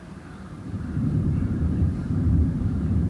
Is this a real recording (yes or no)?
no